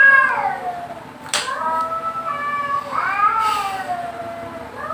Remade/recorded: recorded